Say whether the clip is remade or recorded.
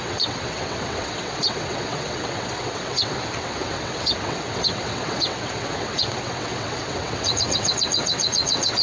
remade